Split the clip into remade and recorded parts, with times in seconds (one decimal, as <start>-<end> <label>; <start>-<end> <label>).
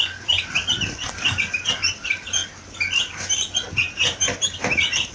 0.0-3.7 recorded; 3.7-5.1 remade